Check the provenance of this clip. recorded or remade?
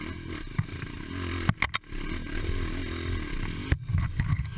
recorded